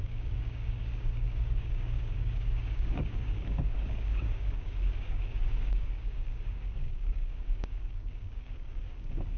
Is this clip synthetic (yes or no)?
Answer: yes